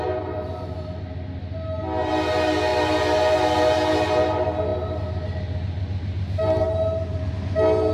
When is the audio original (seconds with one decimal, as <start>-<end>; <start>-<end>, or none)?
0.0-7.9